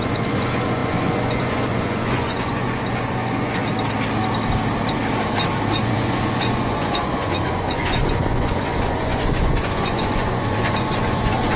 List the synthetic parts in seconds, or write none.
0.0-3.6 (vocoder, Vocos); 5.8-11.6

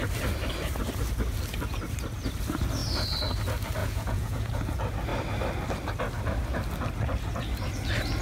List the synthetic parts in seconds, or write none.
3.8-4.5 (vocoder, Vocos)